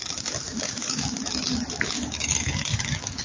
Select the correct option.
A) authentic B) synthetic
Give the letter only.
B